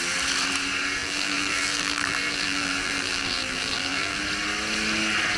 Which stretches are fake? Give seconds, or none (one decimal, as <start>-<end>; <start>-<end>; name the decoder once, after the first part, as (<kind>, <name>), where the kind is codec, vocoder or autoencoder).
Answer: 1.0-4.2 (vocoder, BigVGAN v2)